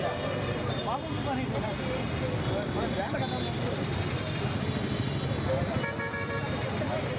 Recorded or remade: recorded